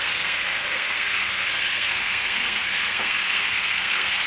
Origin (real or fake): fake